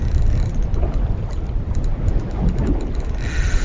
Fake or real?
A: real